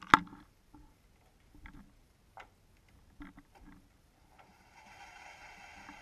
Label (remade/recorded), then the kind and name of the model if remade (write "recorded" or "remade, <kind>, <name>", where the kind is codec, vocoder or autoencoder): recorded